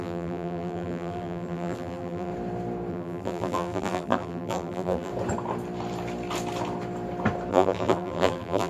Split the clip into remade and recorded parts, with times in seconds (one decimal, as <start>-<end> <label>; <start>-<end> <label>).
0.0-2.3 remade; 2.3-2.9 recorded; 2.9-5.1 remade; 5.1-7.5 recorded; 7.5-8.7 remade